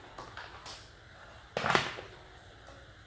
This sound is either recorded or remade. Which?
recorded